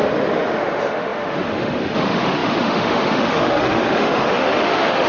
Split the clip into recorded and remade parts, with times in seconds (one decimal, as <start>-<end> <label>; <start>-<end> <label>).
0.0-5.1 remade